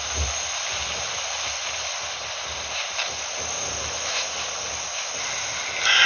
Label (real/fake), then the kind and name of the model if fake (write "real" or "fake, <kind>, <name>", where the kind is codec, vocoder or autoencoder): real